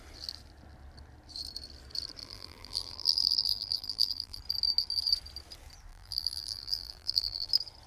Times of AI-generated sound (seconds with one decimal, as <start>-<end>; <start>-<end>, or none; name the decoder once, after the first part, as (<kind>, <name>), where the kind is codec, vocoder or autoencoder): 2.2-4.4 (vocoder, BigVGAN v2); 5.9-7.5